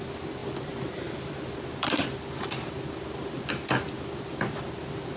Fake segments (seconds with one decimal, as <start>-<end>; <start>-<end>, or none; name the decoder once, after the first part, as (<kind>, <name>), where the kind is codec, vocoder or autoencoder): none